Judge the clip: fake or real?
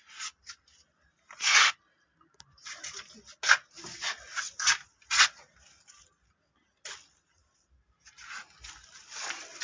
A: real